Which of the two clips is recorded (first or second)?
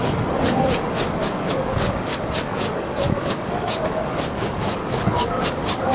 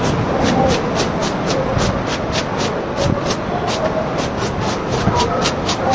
second